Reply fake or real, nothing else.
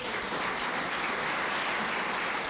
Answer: real